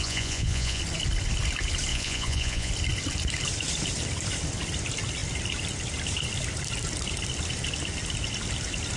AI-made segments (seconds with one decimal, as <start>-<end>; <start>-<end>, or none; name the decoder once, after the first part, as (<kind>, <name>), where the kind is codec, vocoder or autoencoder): 0.0-0.8 (vocoder, Vocos); 1.9-2.7